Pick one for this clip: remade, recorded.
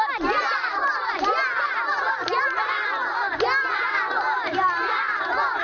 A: remade